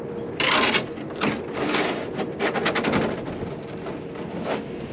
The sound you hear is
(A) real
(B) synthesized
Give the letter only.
A